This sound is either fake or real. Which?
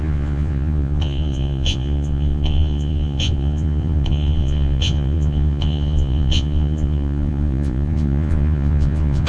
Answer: fake